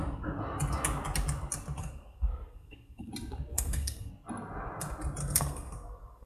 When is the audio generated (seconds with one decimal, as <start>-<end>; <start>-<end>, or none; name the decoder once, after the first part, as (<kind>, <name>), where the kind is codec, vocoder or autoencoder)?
1.8-3.1 (codec, SNAC); 3.5-4.1; 5.2-6.3